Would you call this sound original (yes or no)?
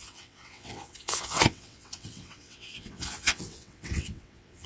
no